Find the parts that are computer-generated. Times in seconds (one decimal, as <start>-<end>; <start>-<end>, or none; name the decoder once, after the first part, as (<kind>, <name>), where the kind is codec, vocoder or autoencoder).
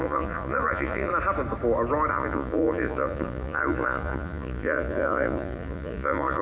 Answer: 0.0-1.1 (vocoder, Vocos); 2.1-6.4